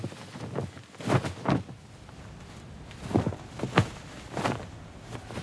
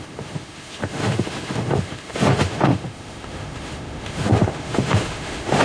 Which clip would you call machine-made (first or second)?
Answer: second